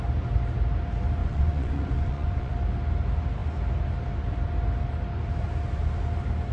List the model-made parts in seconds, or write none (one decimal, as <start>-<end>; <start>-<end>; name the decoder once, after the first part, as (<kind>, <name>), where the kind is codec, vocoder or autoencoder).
1.2-2.5 (vocoder, Vocos)